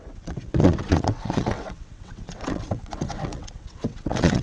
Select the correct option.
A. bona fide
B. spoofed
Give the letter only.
B